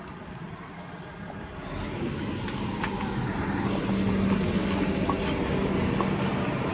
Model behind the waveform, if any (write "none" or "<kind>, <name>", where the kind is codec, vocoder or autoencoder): none